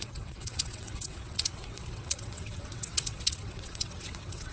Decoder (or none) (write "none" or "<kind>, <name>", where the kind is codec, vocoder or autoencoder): vocoder, WaveNeXt